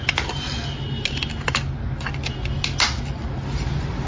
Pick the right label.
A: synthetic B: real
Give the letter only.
B